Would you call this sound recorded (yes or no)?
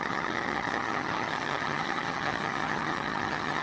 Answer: no